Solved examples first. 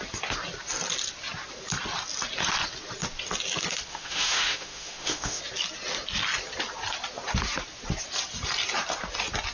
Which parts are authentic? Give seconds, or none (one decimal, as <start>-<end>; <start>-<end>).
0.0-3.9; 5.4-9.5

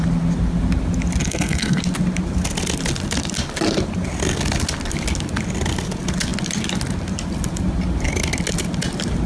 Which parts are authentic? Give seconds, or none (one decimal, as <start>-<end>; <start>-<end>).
0.0-1.2; 1.8-9.3

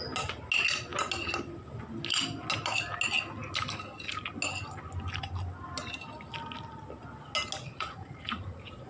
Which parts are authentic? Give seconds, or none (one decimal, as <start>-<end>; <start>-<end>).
0.0-7.6